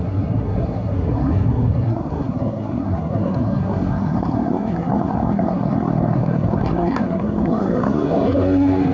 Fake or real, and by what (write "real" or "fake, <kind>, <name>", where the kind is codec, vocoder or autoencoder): fake, codec, SNAC